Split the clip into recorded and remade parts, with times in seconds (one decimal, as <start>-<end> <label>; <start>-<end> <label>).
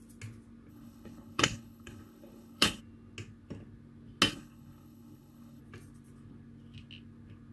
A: 0.0-0.7 recorded; 0.7-2.8 remade; 2.8-4.3 recorded; 4.3-5.6 remade; 5.6-7.5 recorded